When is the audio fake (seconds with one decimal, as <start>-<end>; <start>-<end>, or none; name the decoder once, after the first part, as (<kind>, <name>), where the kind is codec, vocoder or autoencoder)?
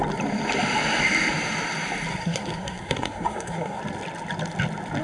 2.1-3.8 (codec, SNAC)